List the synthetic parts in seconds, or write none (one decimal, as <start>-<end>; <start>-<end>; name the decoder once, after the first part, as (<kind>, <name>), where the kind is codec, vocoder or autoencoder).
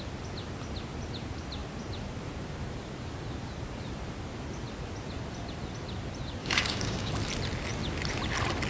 6.4-7.1 (codec, DAC)